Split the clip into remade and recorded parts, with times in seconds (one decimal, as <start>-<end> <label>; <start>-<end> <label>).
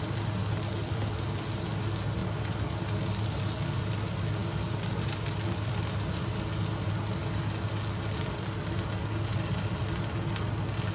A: 0.0-0.8 recorded; 0.8-1.7 remade; 1.7-10.9 recorded